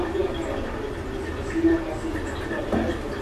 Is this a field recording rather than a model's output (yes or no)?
yes